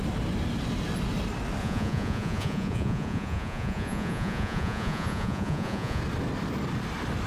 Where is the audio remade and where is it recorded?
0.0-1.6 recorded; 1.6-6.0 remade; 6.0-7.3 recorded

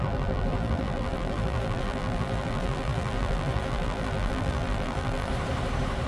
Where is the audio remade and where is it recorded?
0.0-5.3 remade; 5.3-6.1 recorded